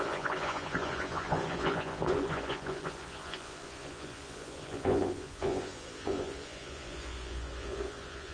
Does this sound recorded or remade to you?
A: remade